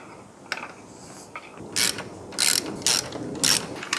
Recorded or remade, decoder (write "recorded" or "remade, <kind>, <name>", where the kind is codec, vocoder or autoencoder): recorded